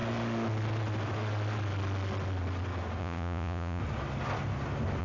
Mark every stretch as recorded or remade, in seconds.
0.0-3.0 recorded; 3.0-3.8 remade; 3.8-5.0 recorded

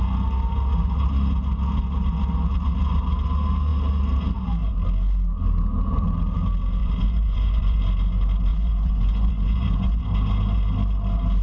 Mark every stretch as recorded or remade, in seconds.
0.0-6.8 recorded; 6.8-7.8 remade; 7.8-8.5 recorded; 8.5-10.0 remade; 10.0-11.4 recorded

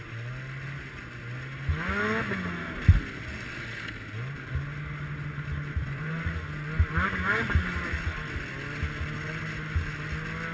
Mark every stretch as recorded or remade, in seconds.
0.0-5.8 recorded; 5.8-6.3 remade; 6.3-10.5 recorded

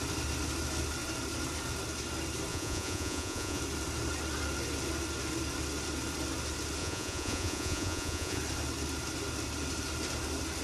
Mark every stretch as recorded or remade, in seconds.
0.0-2.5 recorded; 2.5-3.6 remade; 3.6-6.8 recorded; 6.8-8.4 remade; 8.4-10.6 recorded

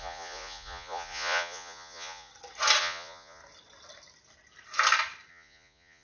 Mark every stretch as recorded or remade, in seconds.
0.0-2.3 remade; 2.3-2.8 recorded; 2.8-3.4 remade; 3.4-5.3 recorded; 5.3-6.0 remade